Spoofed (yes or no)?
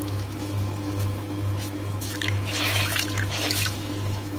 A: yes